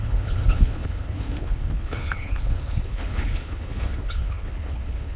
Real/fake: fake